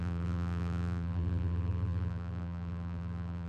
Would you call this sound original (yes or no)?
no